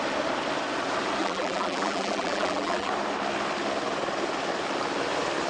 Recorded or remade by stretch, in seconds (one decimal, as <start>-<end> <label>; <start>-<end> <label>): 0.0-1.2 recorded; 1.2-2.9 remade; 2.9-5.5 recorded